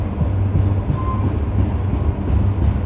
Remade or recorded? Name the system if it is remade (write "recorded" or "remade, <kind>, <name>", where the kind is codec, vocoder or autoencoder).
recorded